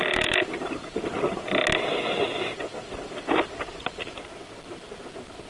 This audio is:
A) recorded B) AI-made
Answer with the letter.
A